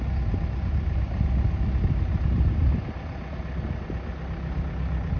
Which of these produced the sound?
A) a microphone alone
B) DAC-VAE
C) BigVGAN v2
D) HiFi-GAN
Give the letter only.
A